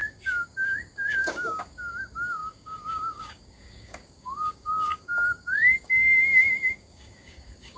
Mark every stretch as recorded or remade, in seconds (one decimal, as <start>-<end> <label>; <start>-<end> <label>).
0.0-7.8 remade